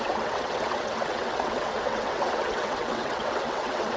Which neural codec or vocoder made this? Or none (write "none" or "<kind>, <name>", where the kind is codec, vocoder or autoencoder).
vocoder, WaveNeXt